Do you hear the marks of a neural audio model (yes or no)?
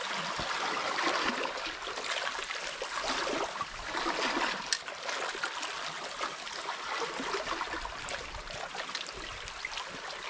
no